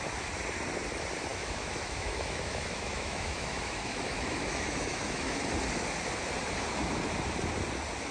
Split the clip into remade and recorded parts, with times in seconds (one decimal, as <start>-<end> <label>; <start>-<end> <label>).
0.0-1.3 recorded; 1.3-5.5 remade; 5.5-8.1 recorded